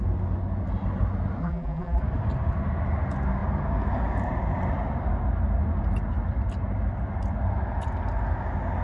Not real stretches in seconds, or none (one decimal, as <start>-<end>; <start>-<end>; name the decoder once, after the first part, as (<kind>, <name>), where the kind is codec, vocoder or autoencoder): 1.4-2.0 (vocoder, BigVGAN v2)

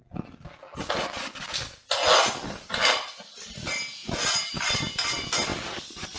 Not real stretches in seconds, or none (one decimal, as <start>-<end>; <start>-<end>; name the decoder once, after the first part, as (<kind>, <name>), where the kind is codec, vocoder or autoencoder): 0.8-1.8 (vocoder, BigVGAN v2); 2.3-4.0; 4.5-6.2